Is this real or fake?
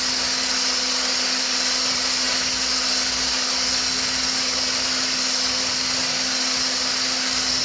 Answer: real